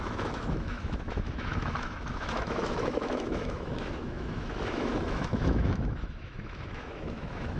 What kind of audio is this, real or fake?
fake